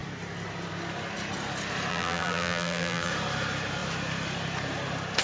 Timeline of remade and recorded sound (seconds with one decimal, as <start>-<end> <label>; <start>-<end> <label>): 0.0-1.9 recorded; 1.9-3.1 remade; 3.1-5.2 recorded